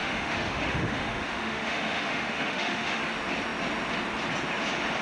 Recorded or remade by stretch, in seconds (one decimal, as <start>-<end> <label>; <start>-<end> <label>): 0.0-3.0 remade; 3.0-5.0 recorded